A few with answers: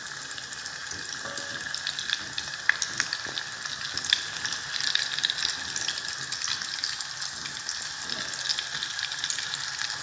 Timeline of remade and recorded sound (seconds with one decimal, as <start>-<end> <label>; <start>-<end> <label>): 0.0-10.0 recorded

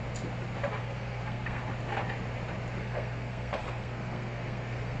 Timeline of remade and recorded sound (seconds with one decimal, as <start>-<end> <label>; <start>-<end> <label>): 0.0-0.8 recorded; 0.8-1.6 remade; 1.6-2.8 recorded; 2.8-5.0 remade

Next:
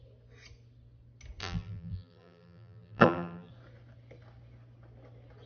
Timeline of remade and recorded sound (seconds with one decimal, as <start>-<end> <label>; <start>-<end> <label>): 0.0-1.4 recorded; 1.4-3.5 remade; 3.5-5.5 recorded

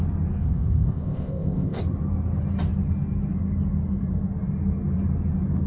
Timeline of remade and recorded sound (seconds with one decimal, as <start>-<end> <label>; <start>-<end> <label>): 0.0-0.4 recorded; 0.4-1.8 remade; 1.8-5.7 recorded

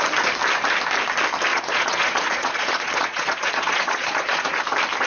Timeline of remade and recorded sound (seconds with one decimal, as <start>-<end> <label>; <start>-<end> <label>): 0.0-1.5 recorded; 1.5-4.6 remade; 4.6-5.1 recorded

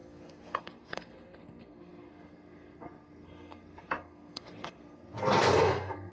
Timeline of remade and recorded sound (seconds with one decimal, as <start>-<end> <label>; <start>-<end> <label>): 0.0-6.1 remade

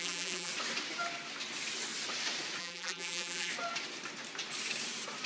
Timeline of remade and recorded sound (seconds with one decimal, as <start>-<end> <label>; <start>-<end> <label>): 0.0-0.5 remade; 0.5-2.6 recorded; 2.6-3.5 remade; 3.5-5.3 recorded

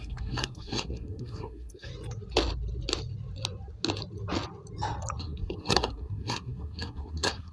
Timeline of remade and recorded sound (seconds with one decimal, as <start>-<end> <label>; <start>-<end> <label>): 0.0-1.9 remade; 1.9-5.2 recorded; 5.2-7.5 remade